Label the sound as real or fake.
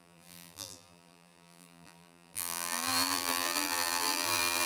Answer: fake